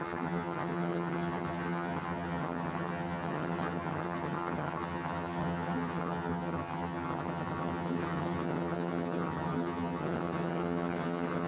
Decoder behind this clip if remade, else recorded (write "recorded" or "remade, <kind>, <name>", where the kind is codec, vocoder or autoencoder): remade, vocoder, HiFi-GAN